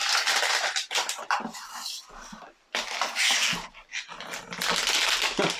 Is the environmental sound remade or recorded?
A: recorded